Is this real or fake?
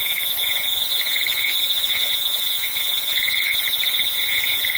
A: fake